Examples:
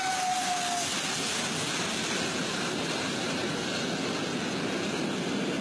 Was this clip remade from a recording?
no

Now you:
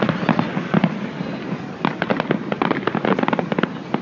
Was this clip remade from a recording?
no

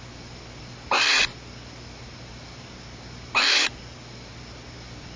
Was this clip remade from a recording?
no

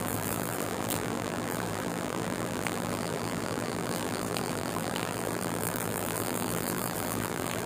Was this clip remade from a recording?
yes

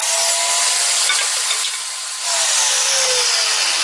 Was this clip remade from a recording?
no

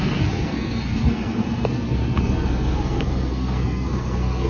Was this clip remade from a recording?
yes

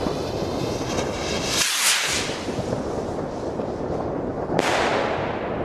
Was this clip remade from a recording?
no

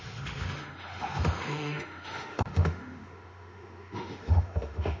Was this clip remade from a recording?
yes